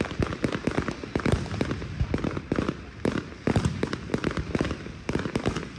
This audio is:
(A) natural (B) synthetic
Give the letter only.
A